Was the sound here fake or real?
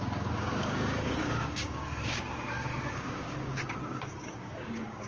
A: fake